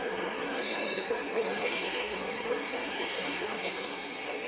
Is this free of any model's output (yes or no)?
no